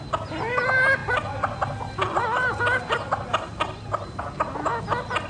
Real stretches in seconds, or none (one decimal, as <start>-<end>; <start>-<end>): 0.0-5.3

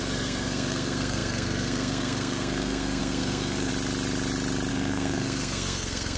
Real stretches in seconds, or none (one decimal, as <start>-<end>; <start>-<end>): 3.7-4.7

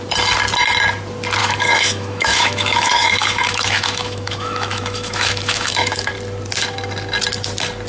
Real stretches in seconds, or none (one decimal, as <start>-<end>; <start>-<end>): 0.0-1.4; 6.1-7.9

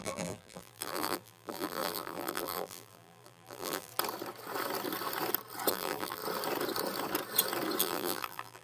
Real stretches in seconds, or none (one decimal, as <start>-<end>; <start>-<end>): 3.9-5.7; 6.2-7.8

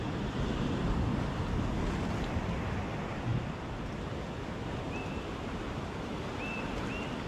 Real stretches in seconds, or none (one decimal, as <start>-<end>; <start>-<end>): 0.0-7.3

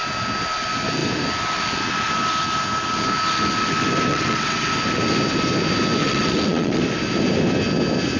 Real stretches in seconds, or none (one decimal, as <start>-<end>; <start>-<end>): 0.0-4.1; 4.7-6.0; 6.8-8.2

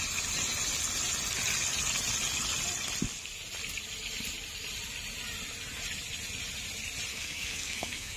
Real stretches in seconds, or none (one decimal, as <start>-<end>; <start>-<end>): 0.0-7.1